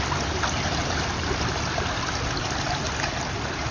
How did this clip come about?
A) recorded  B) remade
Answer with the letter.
A